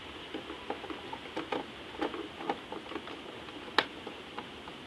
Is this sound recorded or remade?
recorded